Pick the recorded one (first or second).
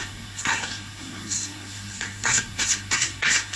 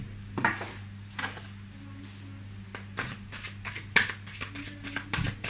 second